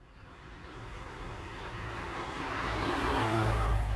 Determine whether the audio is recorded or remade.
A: remade